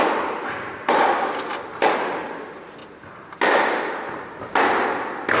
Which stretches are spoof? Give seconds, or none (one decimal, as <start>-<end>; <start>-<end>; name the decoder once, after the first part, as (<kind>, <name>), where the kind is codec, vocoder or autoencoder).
none